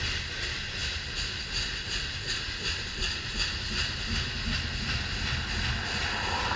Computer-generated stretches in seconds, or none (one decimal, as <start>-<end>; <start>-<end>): none